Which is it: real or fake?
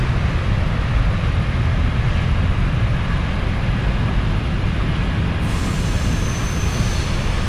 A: real